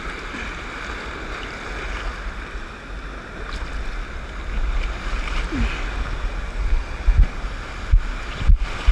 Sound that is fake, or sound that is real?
real